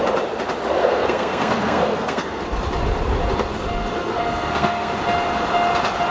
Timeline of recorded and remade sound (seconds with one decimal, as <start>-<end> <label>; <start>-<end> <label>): 0.0-0.8 recorded; 0.8-2.4 remade; 2.4-4.0 recorded; 4.0-4.9 remade; 4.9-6.1 recorded